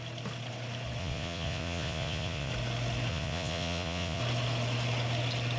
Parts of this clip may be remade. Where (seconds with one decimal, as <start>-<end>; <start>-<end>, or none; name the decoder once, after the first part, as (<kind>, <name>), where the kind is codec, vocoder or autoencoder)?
1.0-2.5 (vocoder, Vocos); 3.1-4.2